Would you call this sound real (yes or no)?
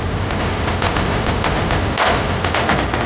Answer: yes